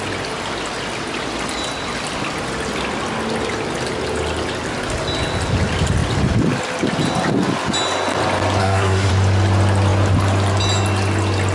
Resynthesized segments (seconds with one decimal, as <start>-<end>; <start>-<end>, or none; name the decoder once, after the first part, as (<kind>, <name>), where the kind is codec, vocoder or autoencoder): 8.6-9.1 (codec, SNAC)